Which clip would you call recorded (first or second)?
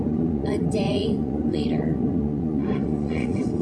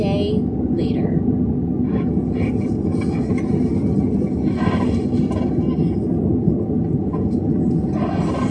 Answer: second